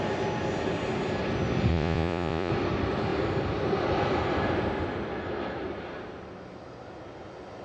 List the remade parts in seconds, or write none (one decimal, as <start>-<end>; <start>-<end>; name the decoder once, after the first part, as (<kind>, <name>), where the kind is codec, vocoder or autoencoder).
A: 1.7-2.5 (vocoder, Vocos)